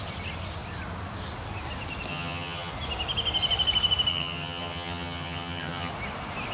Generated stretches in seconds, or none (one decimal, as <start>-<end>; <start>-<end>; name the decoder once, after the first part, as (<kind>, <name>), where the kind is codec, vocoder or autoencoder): 2.1-2.7 (vocoder, HiFi-GAN); 4.1-5.9